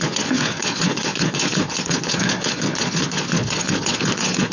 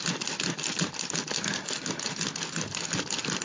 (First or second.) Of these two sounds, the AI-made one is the first